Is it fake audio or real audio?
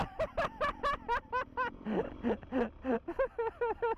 real